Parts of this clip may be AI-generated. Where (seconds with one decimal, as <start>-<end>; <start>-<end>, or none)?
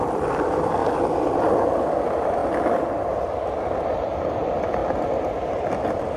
0.0-2.4; 3.0-4.8; 5.5-6.2